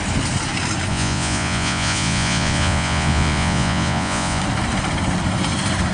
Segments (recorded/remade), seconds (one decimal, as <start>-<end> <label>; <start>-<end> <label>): 0.0-0.9 recorded; 0.9-4.4 remade; 4.4-5.9 recorded